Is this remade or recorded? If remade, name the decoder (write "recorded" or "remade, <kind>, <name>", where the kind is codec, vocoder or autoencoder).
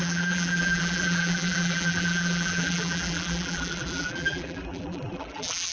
remade, vocoder, BigVGAN v2